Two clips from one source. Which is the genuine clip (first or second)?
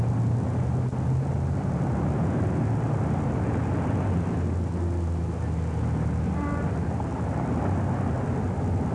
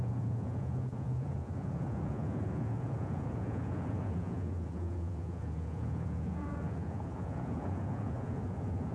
first